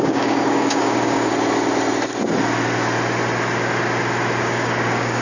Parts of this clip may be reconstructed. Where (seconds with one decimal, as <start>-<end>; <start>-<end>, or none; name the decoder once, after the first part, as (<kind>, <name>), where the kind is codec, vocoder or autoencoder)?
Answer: 0.0-1.3 (codec, DAC); 4.4-5.2